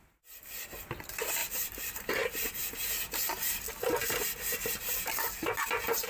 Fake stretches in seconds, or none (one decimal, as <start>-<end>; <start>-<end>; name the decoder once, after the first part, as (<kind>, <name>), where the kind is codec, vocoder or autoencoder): 1.4-1.9 (vocoder, BigVGAN v2)